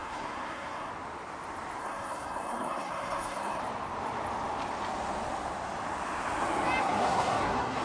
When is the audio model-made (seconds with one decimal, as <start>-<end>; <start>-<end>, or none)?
0.0-0.9; 1.8-3.6; 6.8-7.8